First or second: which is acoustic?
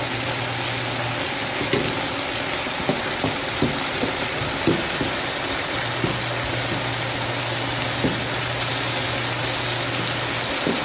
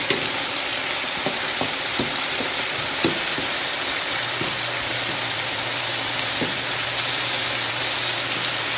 first